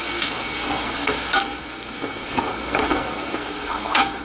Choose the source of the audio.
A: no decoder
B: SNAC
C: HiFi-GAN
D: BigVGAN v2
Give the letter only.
B